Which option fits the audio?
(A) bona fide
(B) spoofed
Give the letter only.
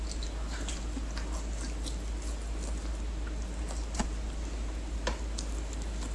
A